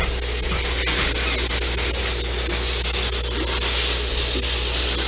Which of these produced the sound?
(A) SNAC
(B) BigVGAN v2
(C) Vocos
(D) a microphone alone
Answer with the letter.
D